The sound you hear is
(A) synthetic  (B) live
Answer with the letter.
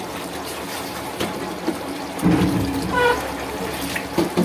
B